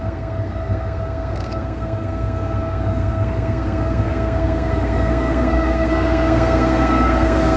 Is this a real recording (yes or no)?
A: no